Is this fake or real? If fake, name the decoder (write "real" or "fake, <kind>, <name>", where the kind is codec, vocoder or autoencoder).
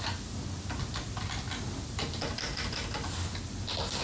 real